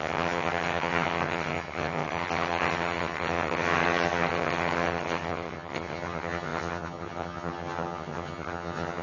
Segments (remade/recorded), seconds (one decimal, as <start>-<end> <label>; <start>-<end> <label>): 0.0-9.0 remade